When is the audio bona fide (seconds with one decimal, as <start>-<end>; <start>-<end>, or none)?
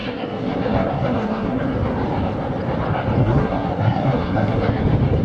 1.6-3.2; 4.8-5.2